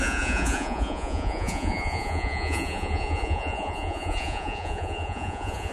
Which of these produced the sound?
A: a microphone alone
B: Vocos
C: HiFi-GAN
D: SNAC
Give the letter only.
B